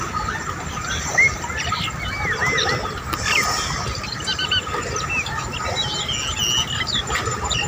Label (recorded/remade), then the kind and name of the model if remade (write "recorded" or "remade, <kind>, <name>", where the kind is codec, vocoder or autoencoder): recorded